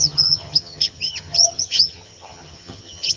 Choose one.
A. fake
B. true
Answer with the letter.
A